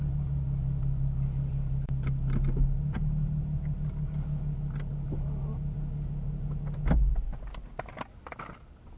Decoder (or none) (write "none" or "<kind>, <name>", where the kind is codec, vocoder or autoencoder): none